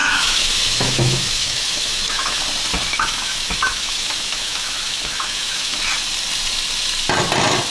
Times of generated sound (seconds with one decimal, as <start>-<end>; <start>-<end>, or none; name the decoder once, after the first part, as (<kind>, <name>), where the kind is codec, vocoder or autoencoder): 0.0-2.4 (autoencoder, DAC-VAE); 2.9-5.8